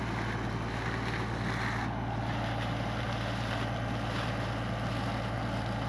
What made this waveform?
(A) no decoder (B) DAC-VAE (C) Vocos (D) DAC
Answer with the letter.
A